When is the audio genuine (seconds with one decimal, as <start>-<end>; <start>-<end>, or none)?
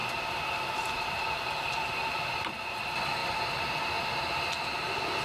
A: 2.6-3.2; 3.7-5.2